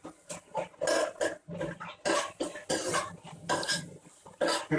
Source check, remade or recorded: recorded